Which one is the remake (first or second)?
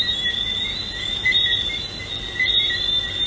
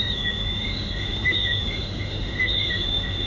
second